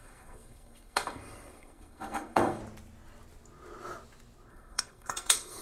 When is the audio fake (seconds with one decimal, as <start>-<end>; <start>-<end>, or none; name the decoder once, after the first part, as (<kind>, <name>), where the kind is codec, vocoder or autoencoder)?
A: 0.0-2.6 (codec, SNAC); 4.5-5.6